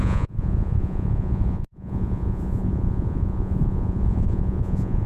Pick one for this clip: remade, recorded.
remade